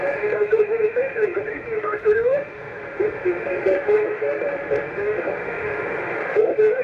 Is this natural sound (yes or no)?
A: no